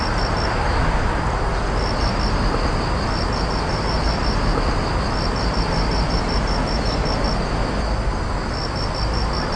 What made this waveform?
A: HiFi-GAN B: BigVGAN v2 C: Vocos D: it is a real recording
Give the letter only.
D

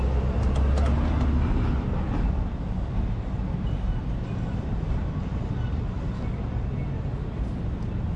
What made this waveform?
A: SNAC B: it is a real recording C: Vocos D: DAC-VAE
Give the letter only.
B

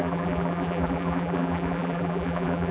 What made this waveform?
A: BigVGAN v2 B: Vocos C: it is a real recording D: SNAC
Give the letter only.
A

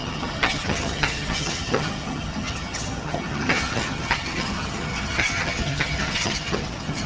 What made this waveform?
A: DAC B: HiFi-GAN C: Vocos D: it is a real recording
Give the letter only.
B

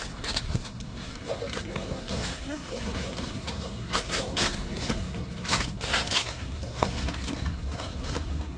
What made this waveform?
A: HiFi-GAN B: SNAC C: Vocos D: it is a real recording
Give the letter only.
B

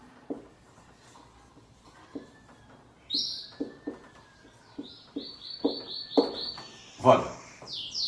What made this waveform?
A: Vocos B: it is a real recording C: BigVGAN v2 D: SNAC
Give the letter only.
B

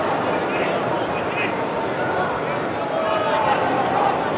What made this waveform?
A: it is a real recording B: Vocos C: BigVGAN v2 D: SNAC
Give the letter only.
A